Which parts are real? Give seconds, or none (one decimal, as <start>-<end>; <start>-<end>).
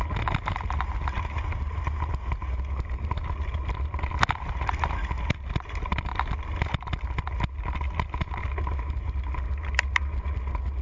0.0-10.8